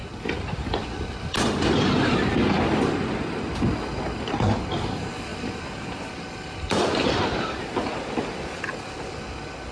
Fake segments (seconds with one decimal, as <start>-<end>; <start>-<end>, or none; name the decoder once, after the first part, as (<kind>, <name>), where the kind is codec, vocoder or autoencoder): 0.0-2.1 (vocoder, BigVGAN v2); 5.3-7.9